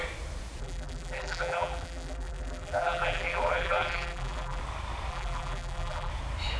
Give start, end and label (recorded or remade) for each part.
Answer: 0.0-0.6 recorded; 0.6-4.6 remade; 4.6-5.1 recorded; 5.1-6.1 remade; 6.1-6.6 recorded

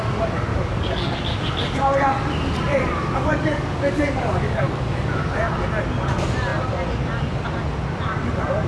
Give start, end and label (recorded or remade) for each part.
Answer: 0.0-0.5 recorded; 0.5-1.2 remade; 1.2-2.7 recorded; 2.7-5.3 remade; 5.3-8.7 recorded